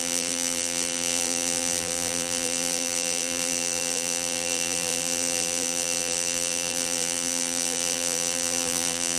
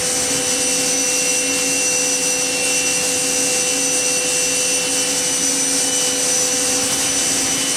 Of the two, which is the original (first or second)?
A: second